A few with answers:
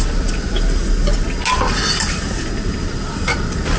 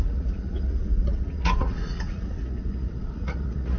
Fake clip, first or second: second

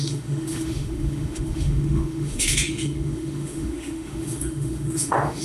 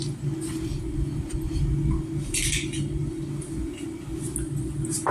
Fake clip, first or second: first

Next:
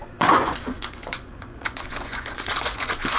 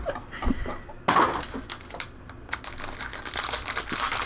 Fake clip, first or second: first